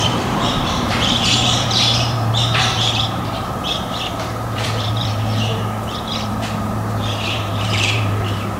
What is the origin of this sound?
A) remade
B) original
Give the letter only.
A